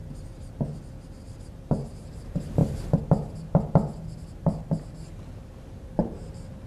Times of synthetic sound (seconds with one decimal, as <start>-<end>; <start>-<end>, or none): 1.2-2.6; 5.8-6.7